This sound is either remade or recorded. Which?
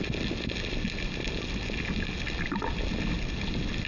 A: recorded